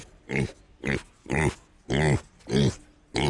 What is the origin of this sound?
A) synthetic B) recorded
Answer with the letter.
B